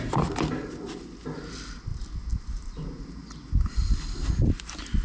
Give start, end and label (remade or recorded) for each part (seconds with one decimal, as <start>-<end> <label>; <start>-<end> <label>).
0.0-5.0 recorded